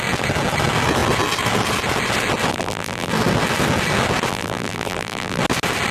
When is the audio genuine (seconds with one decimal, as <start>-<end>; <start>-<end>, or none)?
0.0-2.5; 3.1-4.3; 5.4-5.9